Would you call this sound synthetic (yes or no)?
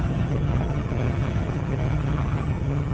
yes